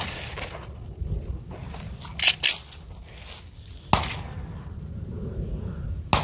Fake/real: real